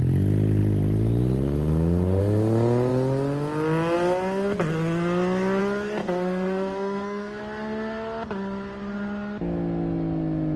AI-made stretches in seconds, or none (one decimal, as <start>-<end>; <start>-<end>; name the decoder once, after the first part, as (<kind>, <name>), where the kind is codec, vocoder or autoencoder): 6.0-7.4 (codec, SNAC)